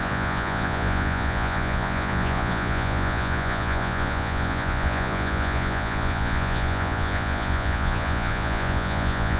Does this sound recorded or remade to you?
remade